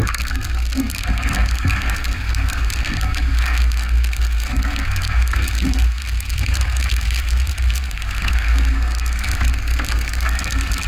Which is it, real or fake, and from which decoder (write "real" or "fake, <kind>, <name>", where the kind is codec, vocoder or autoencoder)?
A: fake, codec, SNAC